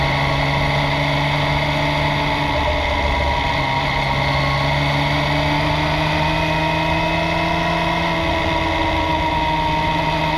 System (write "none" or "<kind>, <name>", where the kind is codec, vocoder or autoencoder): none